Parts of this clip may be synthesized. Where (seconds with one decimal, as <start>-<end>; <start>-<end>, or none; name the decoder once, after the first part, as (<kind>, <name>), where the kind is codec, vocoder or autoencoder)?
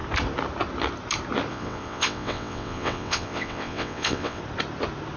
1.5-4.4 (vocoder, WaveNeXt)